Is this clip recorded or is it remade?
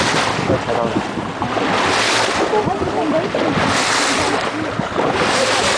recorded